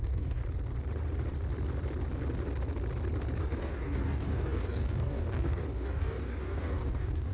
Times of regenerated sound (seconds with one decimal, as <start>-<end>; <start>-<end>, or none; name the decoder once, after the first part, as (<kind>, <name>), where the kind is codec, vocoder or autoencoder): 0.0-0.4 (codec, DAC); 3.4-7.3